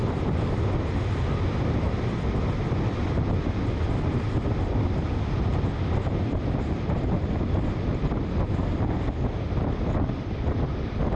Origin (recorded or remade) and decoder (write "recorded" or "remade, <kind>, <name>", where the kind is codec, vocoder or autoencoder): recorded